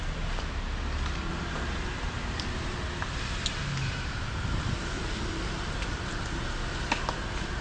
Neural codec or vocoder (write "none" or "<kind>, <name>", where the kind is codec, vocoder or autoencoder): none